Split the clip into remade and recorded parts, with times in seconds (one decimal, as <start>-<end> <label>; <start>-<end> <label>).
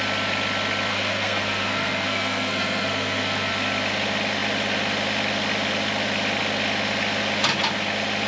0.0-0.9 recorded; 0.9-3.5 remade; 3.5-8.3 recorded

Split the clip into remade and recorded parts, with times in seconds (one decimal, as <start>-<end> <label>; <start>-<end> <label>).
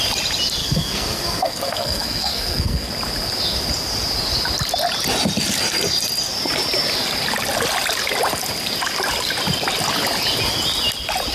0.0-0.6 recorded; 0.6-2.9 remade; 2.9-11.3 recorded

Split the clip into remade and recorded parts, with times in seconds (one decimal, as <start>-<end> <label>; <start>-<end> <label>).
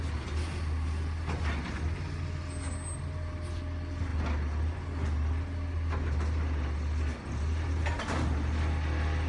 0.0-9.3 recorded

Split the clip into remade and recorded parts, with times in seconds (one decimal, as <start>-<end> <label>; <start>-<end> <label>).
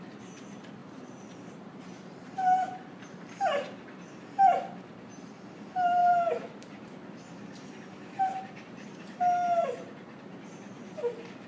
0.0-0.8 recorded; 0.8-4.3 remade; 4.3-6.0 recorded; 6.0-10.5 remade; 10.5-11.5 recorded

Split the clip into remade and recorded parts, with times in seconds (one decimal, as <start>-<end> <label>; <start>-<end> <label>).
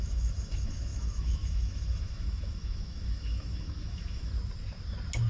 0.0-4.3 remade; 4.3-5.3 recorded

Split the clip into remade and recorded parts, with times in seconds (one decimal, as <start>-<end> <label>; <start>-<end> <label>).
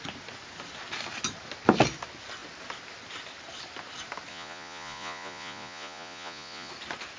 0.0-4.3 recorded; 4.3-6.7 remade; 6.7-7.2 recorded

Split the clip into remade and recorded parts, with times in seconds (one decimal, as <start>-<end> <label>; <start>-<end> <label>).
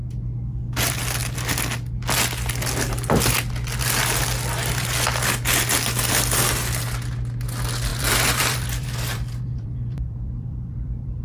0.0-7.9 recorded; 7.9-11.2 remade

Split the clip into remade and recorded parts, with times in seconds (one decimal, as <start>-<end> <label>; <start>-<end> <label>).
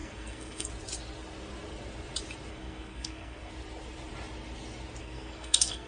0.0-0.7 remade; 0.7-2.5 recorded; 2.5-3.5 remade; 3.5-5.0 recorded; 5.0-5.9 remade